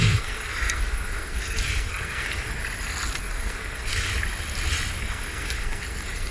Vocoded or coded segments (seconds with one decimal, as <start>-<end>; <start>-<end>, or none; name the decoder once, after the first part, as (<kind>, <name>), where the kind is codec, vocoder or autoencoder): 0.0-2.6 (codec, SNAC); 3.2-4.1; 5.0-6.3